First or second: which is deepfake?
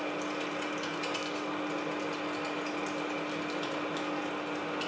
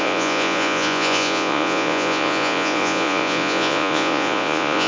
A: second